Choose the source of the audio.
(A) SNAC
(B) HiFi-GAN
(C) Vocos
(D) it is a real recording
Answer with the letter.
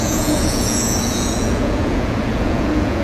C